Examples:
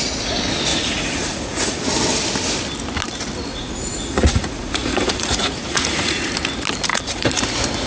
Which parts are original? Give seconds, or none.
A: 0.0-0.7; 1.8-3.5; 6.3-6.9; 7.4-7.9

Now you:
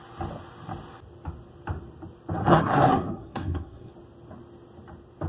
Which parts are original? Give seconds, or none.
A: 0.0-2.4; 3.9-5.3

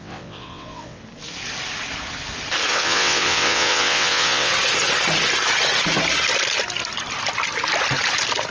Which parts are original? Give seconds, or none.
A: 1.0-2.7; 4.5-8.5

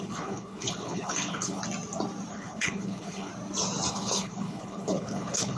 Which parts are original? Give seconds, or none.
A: 1.6-2.3; 3.3-3.9